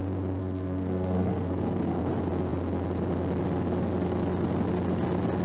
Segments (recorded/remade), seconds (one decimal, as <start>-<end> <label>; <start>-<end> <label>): 0.0-0.4 recorded; 0.4-2.0 remade; 2.0-5.4 recorded